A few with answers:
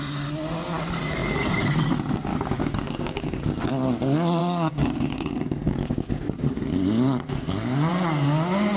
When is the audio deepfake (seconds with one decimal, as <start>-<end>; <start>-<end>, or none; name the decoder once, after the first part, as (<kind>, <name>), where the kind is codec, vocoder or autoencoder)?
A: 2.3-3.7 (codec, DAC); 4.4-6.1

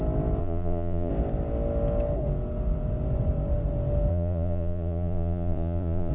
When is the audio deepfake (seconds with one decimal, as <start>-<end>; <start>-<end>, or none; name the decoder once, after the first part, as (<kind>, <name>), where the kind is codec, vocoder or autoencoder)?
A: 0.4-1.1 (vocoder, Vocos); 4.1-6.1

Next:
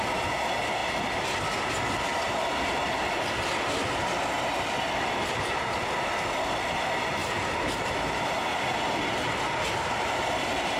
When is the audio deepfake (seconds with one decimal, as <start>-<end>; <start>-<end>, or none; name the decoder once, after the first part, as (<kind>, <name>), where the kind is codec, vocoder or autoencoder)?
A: 7.2-8.4 (vocoder, BigVGAN v2)